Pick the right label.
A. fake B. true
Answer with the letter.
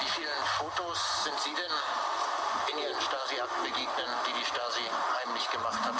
B